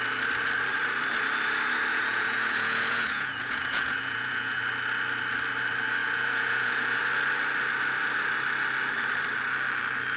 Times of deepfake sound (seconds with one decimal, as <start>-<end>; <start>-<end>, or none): 1.9-4.6; 6.0-7.0